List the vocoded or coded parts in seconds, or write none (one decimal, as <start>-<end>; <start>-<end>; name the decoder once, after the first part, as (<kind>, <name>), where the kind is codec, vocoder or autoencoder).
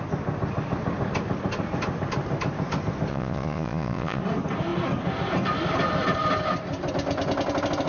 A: 3.1-4.2 (vocoder, Vocos)